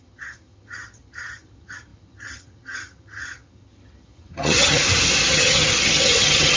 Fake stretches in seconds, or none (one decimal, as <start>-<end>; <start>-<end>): 0.0-4.8; 5.3-6.6